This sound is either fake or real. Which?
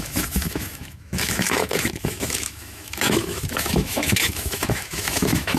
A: fake